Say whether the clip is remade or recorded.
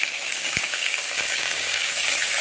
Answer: remade